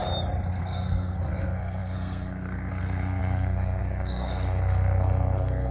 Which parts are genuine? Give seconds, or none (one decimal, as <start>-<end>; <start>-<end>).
0.0-0.6